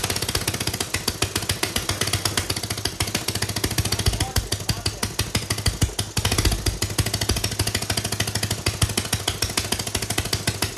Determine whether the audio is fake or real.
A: real